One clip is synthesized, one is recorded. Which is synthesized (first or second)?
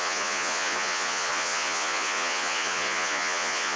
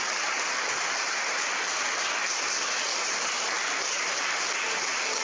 first